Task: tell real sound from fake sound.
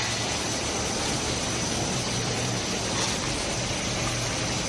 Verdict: real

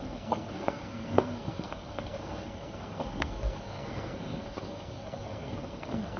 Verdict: fake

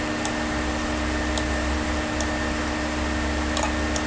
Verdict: real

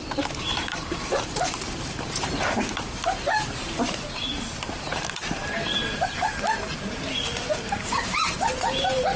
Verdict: fake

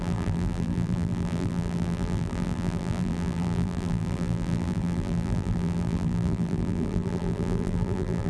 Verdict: fake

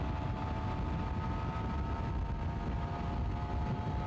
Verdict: real